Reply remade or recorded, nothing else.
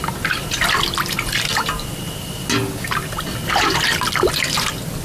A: recorded